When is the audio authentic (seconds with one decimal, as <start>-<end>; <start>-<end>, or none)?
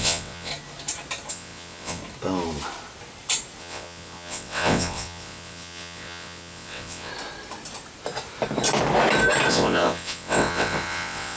0.5-1.3; 2.0-3.6; 7.1-9.5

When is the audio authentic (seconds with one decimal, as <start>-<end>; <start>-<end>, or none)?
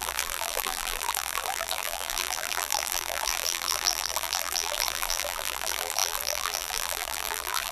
none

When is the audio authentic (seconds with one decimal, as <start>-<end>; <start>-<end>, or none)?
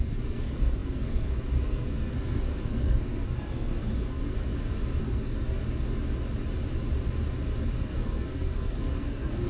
4.5-5.0; 5.6-7.7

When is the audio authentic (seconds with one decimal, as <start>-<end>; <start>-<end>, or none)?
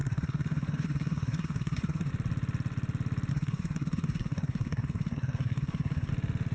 2.1-3.3; 6.1-6.5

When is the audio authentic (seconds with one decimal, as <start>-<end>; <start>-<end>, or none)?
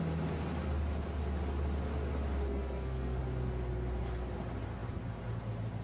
0.0-2.5; 3.2-5.8